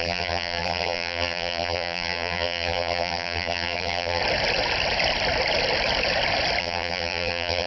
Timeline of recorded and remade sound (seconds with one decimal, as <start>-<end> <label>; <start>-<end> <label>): 0.0-4.2 remade; 4.2-6.6 recorded; 6.6-7.7 remade

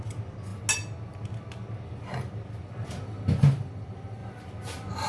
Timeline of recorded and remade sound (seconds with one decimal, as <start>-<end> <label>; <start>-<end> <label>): 0.0-0.5 remade; 0.5-2.6 recorded; 2.6-4.2 remade; 4.2-5.1 recorded

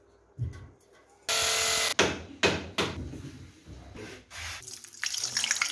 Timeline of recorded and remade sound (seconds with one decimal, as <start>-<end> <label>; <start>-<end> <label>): 0.0-5.7 recorded

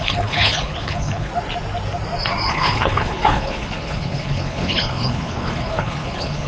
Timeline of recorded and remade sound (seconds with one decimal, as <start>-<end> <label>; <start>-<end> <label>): 0.0-1.3 remade; 1.3-2.5 recorded; 2.5-6.5 remade

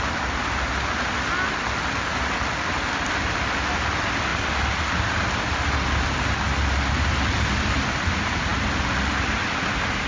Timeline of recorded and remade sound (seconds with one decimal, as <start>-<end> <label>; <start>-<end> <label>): 0.0-10.1 recorded

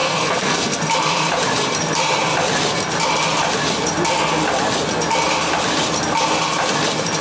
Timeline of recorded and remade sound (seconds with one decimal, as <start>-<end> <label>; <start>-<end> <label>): 0.0-0.8 remade; 0.8-7.2 recorded

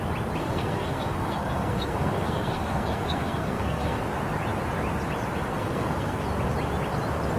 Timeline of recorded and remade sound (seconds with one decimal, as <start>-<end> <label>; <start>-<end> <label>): 0.0-0.4 recorded; 0.4-4.0 remade; 4.0-5.5 recorded; 5.5-6.2 remade; 6.2-7.4 recorded

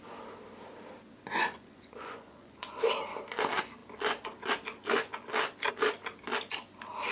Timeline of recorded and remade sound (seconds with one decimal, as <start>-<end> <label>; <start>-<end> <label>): 0.0-1.3 recorded; 1.3-2.8 remade; 2.8-7.1 recorded